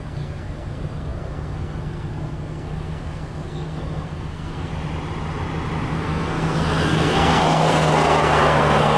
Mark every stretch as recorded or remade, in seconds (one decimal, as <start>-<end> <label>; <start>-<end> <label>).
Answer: 0.0-4.7 remade; 4.7-5.9 recorded; 5.9-9.0 remade